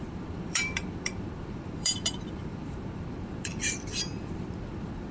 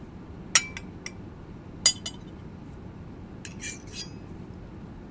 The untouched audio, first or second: second